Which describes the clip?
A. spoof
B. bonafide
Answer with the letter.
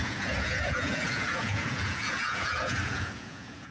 A